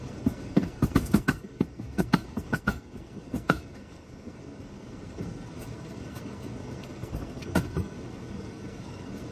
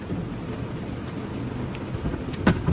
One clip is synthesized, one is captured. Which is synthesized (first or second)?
first